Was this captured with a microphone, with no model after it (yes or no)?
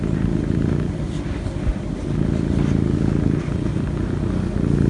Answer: yes